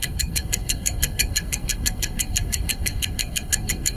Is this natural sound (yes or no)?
no